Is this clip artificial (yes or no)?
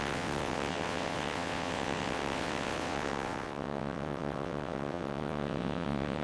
yes